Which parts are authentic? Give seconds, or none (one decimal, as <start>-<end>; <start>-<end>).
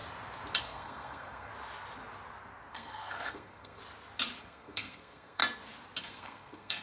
0.0-0.6; 1.5-2.7; 3.8-4.4; 5.4-6.0